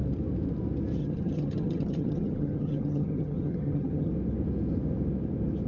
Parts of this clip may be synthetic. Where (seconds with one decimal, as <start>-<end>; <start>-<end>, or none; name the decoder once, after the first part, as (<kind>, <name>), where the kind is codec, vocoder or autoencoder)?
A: 1.0-4.1 (vocoder, HiFi-GAN)